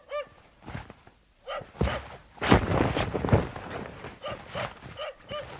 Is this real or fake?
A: real